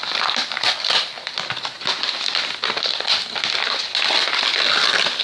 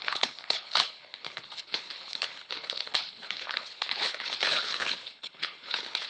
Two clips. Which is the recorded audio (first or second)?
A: first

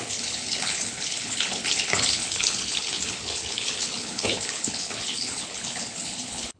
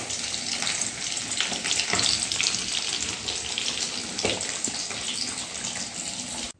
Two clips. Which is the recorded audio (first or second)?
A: second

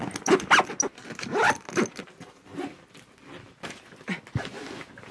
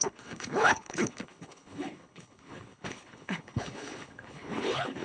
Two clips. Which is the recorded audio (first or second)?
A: first